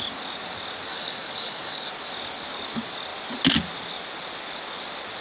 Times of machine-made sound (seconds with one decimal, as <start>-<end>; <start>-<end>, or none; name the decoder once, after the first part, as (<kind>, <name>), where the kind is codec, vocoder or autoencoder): 0.9-1.9 (codec, DAC)